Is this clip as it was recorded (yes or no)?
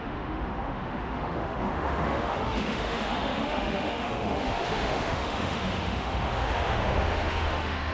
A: no